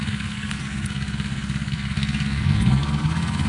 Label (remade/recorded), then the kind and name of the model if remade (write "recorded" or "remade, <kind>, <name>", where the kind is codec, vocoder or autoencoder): remade, codec, SNAC